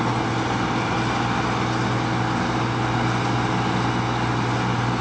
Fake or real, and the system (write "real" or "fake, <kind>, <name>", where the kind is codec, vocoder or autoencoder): real